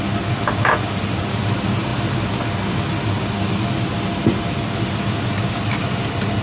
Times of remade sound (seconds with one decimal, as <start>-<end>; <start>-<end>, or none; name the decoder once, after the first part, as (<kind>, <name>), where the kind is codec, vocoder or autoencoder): none